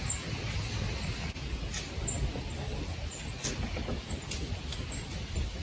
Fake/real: real